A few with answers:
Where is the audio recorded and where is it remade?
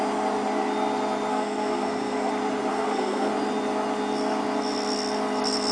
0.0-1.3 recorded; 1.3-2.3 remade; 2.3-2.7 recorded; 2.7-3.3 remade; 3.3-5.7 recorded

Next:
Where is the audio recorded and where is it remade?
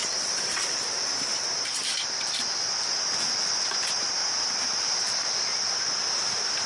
0.0-3.0 remade; 3.0-4.2 recorded; 4.2-5.4 remade; 5.4-6.7 recorded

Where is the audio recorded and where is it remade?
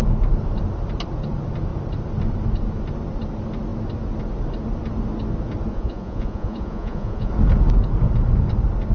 0.0-5.7 recorded; 5.7-7.3 remade; 7.3-8.9 recorded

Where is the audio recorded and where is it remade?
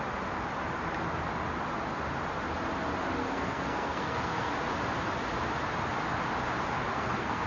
0.0-3.2 recorded; 3.2-4.5 remade; 4.5-6.9 recorded; 6.9-7.5 remade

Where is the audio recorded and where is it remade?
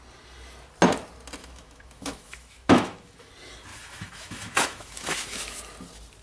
0.0-1.4 recorded; 1.4-3.3 remade; 3.3-3.7 recorded; 3.7-5.6 remade; 5.6-6.2 recorded